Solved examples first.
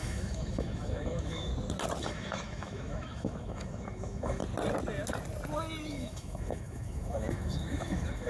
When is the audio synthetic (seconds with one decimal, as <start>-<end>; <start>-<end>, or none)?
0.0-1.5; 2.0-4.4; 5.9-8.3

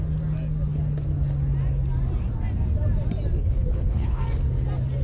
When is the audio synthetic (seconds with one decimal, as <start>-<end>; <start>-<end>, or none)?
3.4-4.2

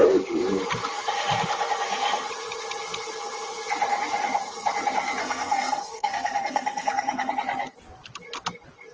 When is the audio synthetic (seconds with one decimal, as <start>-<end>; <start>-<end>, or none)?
5.2-7.3

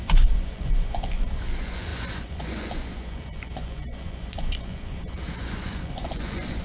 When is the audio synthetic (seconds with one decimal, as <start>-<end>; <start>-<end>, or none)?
0.0-6.6

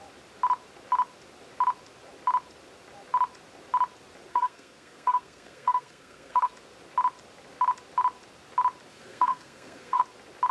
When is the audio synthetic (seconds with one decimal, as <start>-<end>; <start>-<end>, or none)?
4.3-6.5; 8.9-10.0

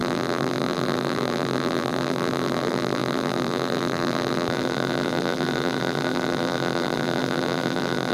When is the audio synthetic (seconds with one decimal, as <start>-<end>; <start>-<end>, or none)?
0.0-8.1

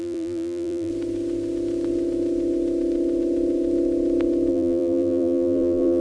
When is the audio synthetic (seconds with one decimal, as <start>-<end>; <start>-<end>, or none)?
0.0-0.9; 4.5-6.0

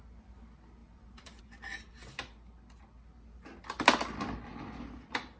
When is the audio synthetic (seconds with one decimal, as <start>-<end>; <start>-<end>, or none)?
0.8-1.4